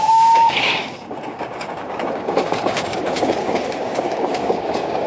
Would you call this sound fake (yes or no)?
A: yes